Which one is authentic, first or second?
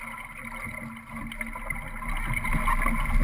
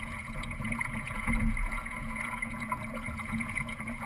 first